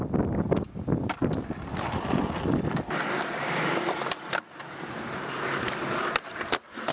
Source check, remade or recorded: recorded